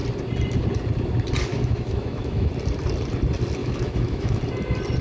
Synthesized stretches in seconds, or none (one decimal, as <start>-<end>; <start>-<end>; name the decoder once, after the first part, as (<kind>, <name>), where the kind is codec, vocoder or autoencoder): 1.5-2.5 (autoencoder, DAC-VAE); 3.6-4.4